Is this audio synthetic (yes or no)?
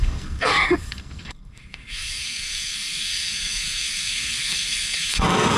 yes